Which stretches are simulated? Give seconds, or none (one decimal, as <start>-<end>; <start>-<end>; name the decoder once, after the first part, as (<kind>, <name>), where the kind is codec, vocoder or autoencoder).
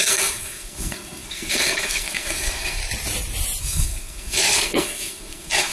0.0-2.8 (codec, SNAC); 3.6-5.7